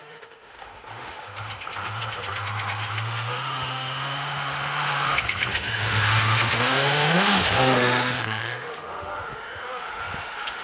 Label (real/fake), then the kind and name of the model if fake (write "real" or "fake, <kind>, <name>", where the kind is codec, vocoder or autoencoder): fake, autoencoder, DAC-VAE